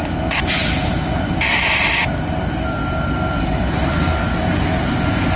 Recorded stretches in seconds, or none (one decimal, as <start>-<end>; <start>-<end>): 0.0-5.4